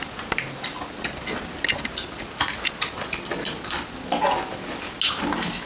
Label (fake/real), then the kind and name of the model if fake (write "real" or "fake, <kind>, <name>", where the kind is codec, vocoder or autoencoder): real